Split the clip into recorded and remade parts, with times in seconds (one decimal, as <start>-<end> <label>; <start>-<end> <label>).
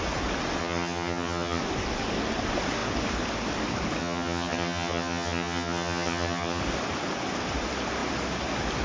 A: 0.0-0.6 recorded; 0.6-1.6 remade; 1.6-4.0 recorded; 4.0-6.6 remade; 6.6-8.8 recorded